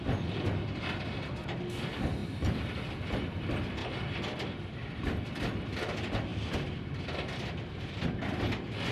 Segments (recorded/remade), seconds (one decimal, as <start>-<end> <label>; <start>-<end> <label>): 0.0-2.2 recorded; 2.2-2.8 remade; 2.8-8.9 recorded